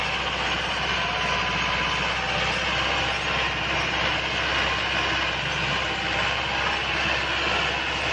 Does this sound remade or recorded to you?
recorded